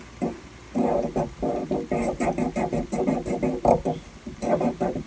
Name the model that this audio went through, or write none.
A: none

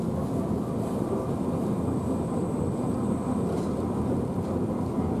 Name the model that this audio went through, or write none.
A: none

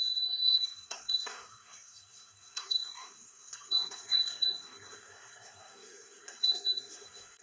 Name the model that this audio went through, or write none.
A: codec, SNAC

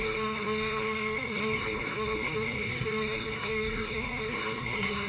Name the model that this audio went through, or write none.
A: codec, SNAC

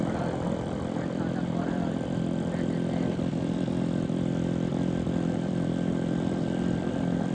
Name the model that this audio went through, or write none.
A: vocoder, BigVGAN v2